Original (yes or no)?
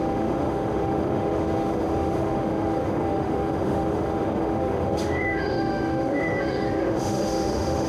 no